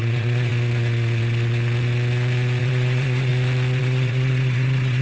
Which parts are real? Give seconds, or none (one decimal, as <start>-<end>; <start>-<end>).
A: 0.5-2.6; 3.3-3.8